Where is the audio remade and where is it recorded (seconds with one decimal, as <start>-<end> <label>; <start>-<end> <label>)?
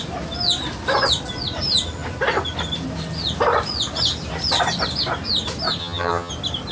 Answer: 0.0-5.8 recorded; 5.8-6.3 remade; 6.3-6.7 recorded